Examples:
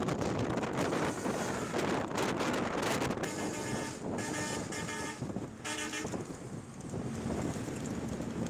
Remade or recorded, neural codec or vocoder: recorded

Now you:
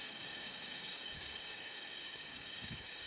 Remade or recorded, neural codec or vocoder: remade, codec, DAC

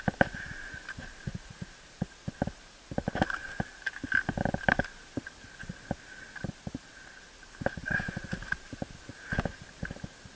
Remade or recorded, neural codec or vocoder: recorded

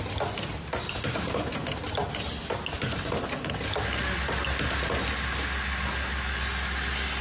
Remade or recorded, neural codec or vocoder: recorded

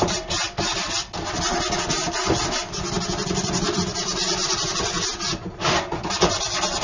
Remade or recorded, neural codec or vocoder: recorded